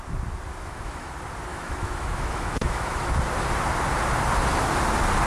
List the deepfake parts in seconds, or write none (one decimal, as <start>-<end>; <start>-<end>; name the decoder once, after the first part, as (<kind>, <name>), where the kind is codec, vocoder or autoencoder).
0.5-1.1 (autoencoder, DAC-VAE); 1.5-3.1

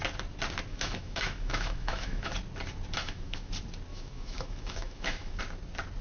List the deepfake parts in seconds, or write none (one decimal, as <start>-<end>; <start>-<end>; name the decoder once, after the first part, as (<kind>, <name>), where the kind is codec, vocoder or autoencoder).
0.7-2.3 (autoencoder, DAC-VAE); 3.0-3.5; 3.9-5.4